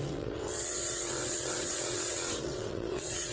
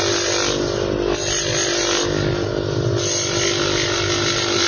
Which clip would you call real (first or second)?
second